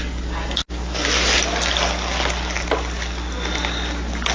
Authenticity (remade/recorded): recorded